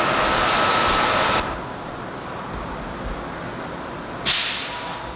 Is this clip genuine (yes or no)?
yes